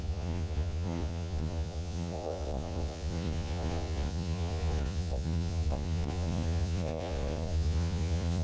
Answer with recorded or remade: remade